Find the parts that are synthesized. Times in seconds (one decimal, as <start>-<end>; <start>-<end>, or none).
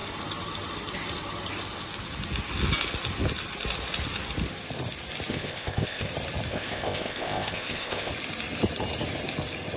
5.3-6.1; 6.5-8.1